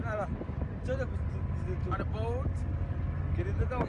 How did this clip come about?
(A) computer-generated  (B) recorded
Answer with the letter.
B